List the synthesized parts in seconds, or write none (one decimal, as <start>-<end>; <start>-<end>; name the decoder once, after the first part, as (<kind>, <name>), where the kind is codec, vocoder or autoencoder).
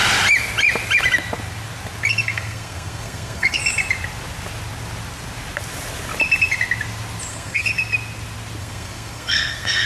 2.1-3.6 (codec, SNAC); 7.3-7.7; 8.6-9.9